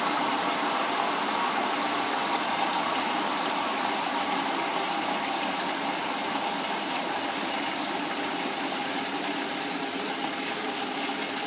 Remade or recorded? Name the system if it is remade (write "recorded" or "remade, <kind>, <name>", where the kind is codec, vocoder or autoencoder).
recorded